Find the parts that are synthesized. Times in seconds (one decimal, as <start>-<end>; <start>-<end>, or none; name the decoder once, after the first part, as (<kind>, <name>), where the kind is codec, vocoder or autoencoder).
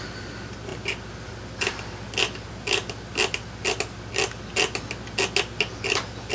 none